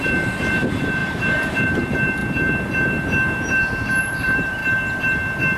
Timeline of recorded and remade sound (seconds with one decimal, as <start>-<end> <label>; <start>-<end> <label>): 0.0-2.2 remade; 2.2-4.0 recorded; 4.0-4.6 remade; 4.6-5.6 recorded